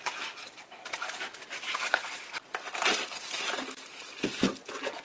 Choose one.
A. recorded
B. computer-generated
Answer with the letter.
A